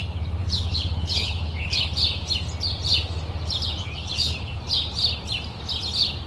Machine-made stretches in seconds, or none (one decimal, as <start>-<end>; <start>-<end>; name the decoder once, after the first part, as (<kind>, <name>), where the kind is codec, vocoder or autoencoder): 0.4-2.0 (codec, HILCodec); 3.8-4.6